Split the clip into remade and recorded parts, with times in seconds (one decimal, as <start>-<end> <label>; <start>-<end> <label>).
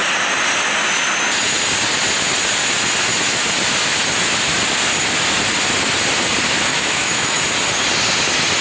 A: 0.0-6.7 recorded; 6.7-7.4 remade; 7.4-8.6 recorded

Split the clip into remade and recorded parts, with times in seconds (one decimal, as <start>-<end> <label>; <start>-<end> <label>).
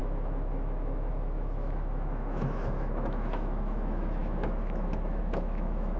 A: 0.0-6.0 remade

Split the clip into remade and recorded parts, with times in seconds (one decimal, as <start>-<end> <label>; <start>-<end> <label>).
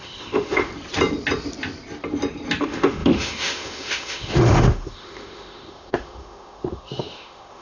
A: 0.0-0.7 remade; 0.7-2.6 recorded; 2.6-7.6 remade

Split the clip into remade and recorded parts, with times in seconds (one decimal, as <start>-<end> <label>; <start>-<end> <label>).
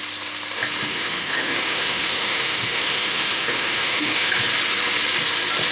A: 0.0-0.9 recorded; 0.9-4.3 remade; 4.3-5.7 recorded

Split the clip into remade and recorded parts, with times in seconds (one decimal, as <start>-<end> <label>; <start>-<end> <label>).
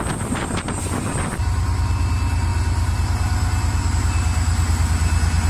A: 0.0-5.5 recorded